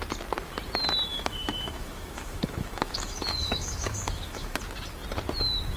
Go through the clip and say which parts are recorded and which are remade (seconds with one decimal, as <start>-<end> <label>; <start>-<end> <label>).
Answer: 0.0-1.1 recorded; 1.1-4.6 remade; 4.6-5.8 recorded

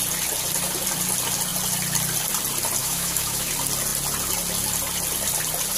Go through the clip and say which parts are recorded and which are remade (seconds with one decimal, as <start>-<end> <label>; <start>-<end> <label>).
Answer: 0.0-2.8 recorded; 2.8-3.5 remade; 3.5-5.8 recorded